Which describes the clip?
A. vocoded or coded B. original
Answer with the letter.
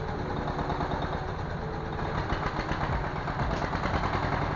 B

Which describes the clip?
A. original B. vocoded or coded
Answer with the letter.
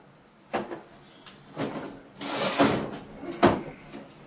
A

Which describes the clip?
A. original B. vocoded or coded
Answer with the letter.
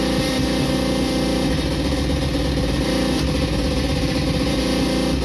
A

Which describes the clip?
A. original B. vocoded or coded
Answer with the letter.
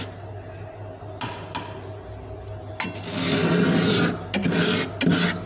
A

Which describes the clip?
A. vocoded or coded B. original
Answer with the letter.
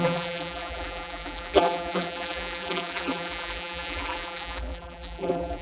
A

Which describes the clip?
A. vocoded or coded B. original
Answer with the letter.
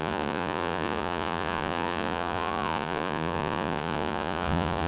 A